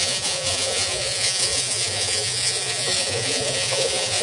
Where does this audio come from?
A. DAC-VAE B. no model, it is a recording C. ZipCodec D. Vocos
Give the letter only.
D